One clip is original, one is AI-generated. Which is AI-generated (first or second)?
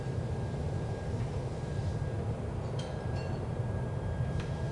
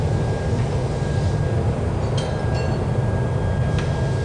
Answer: first